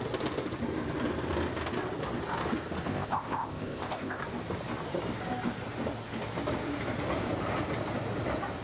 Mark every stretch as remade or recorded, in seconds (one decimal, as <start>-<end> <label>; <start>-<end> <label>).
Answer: 0.0-2.9 recorded; 2.9-4.2 remade; 4.2-8.6 recorded